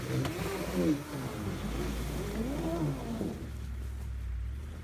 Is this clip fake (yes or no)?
no